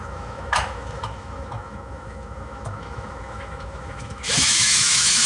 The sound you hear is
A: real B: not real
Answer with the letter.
B